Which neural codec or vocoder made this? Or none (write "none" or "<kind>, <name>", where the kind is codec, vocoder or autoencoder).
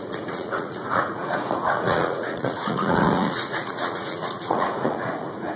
vocoder, Vocos